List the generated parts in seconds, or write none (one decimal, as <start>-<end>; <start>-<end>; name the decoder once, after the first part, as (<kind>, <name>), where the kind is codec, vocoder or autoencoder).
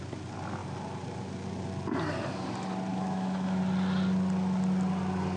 2.9-3.6 (autoencoder, DAC-VAE)